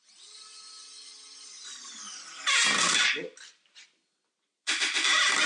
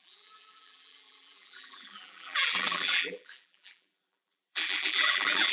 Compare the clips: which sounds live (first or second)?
first